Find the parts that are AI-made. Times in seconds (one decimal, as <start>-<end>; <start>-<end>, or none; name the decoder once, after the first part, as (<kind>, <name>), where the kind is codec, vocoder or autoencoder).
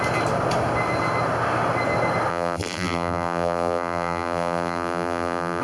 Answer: 2.3-5.6 (vocoder, BigVGAN v2)